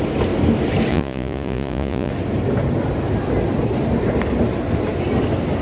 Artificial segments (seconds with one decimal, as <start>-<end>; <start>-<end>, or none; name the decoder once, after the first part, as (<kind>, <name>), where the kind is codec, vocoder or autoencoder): 0.9-2.1 (vocoder, Vocos)

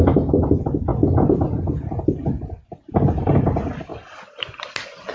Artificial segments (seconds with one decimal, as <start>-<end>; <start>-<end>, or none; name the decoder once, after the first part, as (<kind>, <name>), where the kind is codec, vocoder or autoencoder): 3.9-5.1 (vocoder, BigVGAN v2)

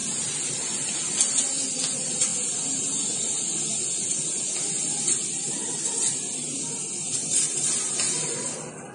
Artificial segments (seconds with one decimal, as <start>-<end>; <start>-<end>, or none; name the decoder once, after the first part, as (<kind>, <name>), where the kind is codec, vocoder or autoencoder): none

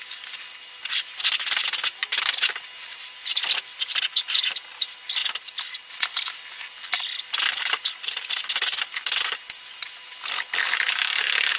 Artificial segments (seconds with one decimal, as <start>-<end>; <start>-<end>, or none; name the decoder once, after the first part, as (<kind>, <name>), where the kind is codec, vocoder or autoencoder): 1.6-3.4 (vocoder, BigVGAN v2)

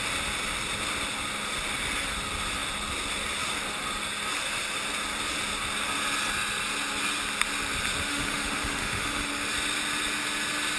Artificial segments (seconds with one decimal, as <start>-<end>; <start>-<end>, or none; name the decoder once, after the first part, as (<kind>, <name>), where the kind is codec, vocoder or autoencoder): 8.1-9.3 (autoencoder, DAC-VAE)

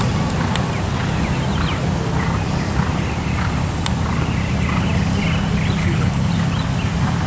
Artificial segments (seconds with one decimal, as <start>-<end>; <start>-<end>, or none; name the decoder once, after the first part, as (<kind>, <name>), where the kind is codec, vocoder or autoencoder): 5.8-6.3 (codec, HILCodec)